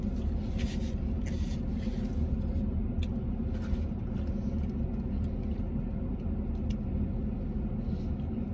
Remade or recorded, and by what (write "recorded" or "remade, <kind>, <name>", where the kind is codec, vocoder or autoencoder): recorded